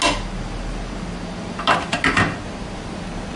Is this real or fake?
real